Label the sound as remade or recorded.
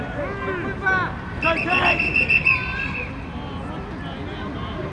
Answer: recorded